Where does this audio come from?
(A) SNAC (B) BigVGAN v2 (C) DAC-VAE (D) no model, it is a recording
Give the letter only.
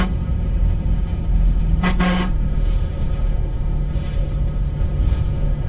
C